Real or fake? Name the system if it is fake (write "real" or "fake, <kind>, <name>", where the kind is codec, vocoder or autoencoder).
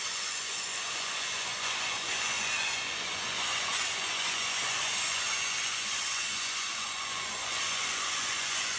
fake, vocoder, Vocos